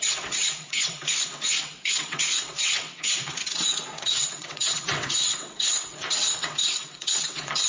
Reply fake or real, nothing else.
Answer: fake